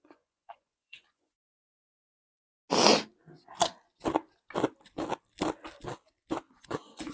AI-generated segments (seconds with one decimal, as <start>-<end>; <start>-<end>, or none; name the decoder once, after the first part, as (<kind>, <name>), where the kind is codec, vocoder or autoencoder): 0.0-2.4 (vocoder, Vocos); 6.5-7.1